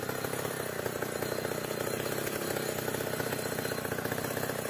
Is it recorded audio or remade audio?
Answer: recorded